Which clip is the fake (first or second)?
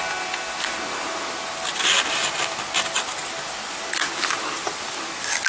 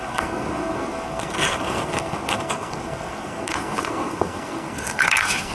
second